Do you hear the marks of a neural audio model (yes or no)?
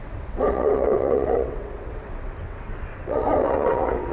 yes